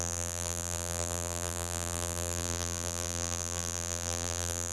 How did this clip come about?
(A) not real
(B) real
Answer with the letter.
A